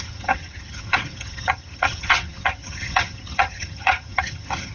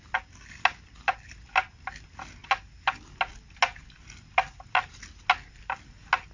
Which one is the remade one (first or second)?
first